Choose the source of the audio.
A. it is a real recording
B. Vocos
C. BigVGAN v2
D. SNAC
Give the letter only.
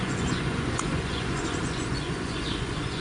B